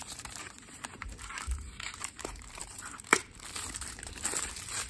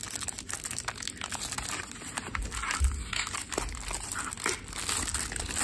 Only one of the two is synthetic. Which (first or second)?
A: first